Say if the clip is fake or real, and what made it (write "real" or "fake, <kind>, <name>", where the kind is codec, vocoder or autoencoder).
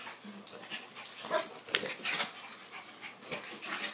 real